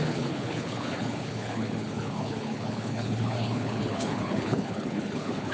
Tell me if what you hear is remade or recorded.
remade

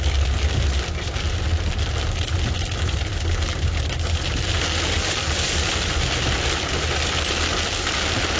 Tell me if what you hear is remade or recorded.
recorded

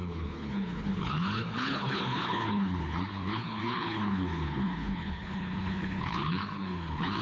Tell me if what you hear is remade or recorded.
remade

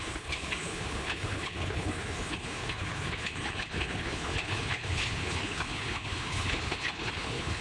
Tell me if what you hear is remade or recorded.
remade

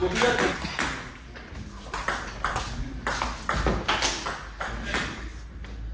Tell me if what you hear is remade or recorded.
recorded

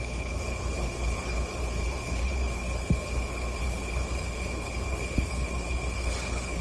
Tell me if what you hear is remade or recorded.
remade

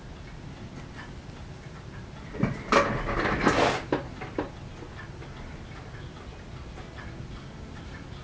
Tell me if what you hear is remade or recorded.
recorded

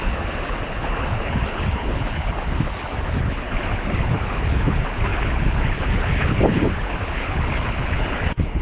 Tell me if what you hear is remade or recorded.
remade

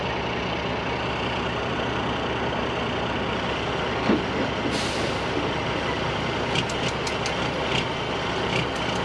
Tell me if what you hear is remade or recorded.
recorded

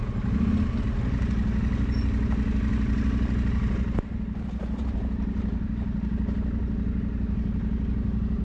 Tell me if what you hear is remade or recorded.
recorded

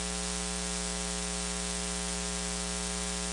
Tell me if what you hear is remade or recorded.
recorded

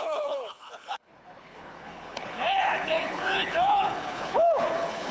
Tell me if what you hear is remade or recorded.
remade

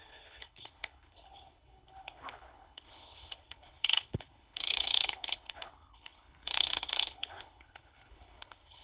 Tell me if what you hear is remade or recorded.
remade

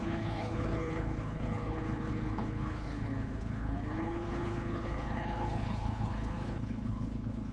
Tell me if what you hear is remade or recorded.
remade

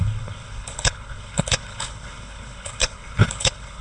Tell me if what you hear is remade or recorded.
remade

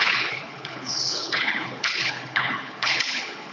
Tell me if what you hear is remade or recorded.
remade